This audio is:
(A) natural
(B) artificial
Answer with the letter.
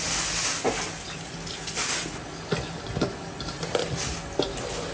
A